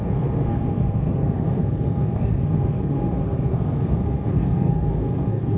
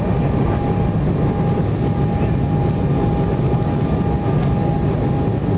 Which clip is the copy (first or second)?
first